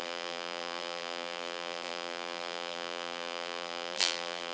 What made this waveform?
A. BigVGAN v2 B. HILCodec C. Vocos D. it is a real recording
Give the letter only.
A